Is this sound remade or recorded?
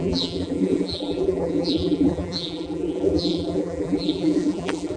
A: remade